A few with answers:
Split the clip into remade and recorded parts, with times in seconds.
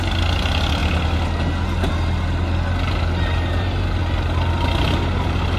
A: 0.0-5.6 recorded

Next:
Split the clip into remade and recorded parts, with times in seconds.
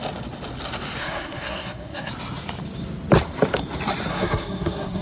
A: 0.0-1.0 recorded; 1.0-2.1 remade; 2.1-4.1 recorded; 4.1-5.0 remade